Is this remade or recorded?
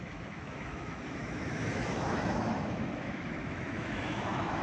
remade